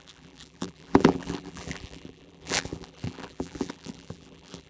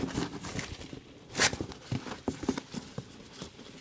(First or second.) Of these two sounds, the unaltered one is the second